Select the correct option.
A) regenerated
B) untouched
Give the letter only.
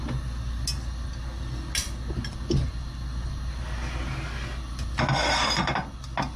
B